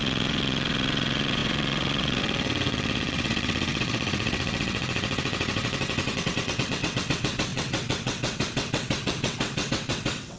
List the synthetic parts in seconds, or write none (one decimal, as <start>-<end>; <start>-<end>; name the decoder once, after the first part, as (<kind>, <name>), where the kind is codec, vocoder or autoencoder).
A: 0.0-10.4 (vocoder, WaveNeXt)